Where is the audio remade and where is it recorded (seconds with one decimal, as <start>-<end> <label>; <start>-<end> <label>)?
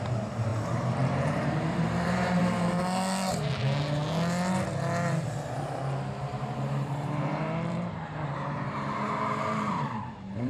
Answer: 0.0-2.4 remade; 2.4-3.3 recorded; 3.3-4.0 remade; 4.0-6.2 recorded; 6.2-10.5 remade